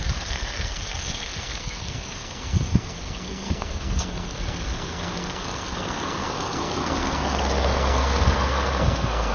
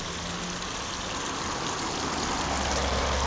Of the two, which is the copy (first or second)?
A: first